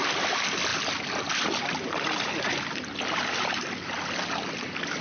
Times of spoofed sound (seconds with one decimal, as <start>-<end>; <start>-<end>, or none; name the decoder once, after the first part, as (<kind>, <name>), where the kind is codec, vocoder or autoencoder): none